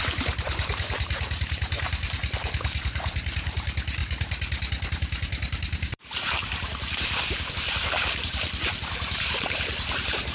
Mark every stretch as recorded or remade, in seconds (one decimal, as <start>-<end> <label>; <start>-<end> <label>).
0.0-10.3 remade